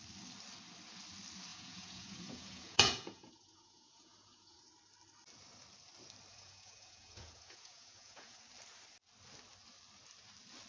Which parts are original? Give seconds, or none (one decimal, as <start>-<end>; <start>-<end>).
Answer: 0.0-1.5; 4.7-6.3; 8.4-10.7